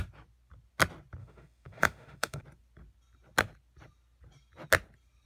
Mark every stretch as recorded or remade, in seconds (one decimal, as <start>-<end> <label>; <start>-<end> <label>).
0.0-1.2 recorded; 1.2-2.4 remade; 2.4-5.3 recorded